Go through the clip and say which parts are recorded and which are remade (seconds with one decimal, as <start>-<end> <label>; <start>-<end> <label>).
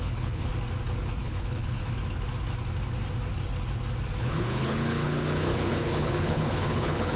0.0-0.5 remade; 0.5-1.2 recorded; 1.2-1.8 remade; 1.8-4.2 recorded; 4.2-7.2 remade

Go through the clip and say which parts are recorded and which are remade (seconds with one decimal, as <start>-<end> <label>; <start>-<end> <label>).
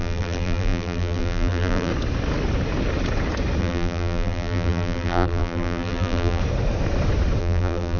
0.0-1.9 remade; 1.9-3.6 recorded; 3.6-6.4 remade; 6.4-7.4 recorded; 7.4-8.0 remade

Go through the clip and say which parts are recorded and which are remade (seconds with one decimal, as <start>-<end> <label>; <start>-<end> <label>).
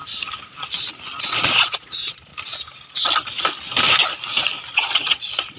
0.0-1.2 recorded; 1.2-2.3 remade; 2.3-4.7 recorded; 4.7-5.6 remade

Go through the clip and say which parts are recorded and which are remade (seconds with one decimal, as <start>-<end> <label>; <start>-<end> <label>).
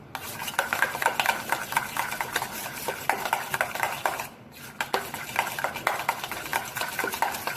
0.0-7.6 recorded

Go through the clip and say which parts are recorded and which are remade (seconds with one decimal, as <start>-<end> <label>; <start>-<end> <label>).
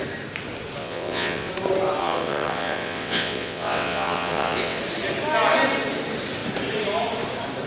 0.0-0.8 recorded; 0.8-1.5 remade; 1.5-2.0 recorded; 2.0-4.8 remade; 4.8-7.7 recorded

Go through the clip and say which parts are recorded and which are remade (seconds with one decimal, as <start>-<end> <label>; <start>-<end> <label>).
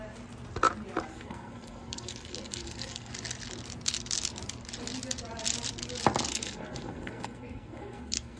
0.0-1.1 recorded; 1.1-3.1 remade; 3.1-6.3 recorded; 6.3-8.4 remade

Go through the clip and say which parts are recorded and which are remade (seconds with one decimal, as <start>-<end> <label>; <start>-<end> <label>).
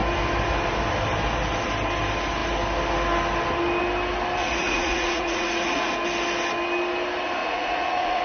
0.0-4.4 recorded; 4.4-5.9 remade; 5.9-7.4 recorded; 7.4-8.2 remade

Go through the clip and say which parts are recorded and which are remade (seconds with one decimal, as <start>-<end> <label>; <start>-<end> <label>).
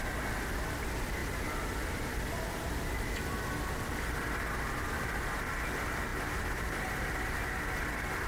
0.0-8.3 recorded